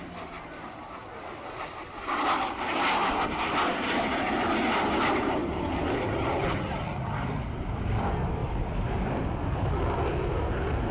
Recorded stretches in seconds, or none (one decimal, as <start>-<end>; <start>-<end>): 0.0-8.4; 9.2-10.9